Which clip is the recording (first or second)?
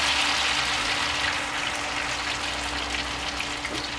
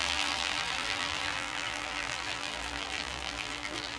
first